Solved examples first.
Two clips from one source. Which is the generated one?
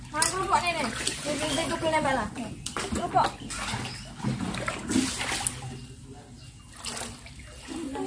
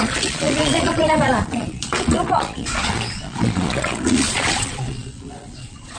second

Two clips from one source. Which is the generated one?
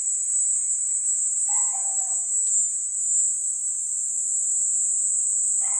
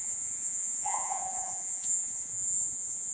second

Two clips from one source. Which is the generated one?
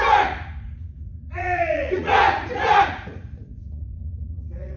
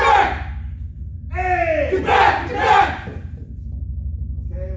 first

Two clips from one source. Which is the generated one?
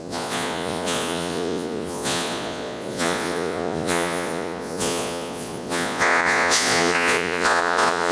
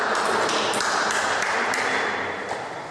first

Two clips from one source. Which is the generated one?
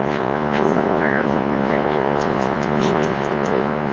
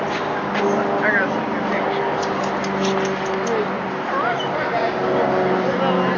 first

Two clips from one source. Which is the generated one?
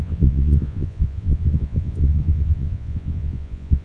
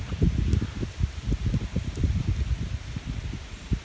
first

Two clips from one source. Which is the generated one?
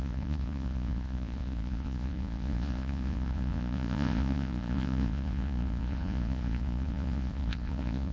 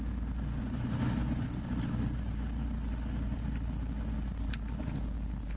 first